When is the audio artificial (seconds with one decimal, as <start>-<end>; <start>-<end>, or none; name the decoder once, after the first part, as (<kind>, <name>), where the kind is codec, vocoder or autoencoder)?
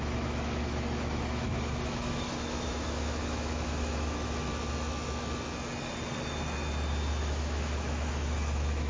0.0-4.5 (autoencoder, DAC-VAE); 7.2-8.9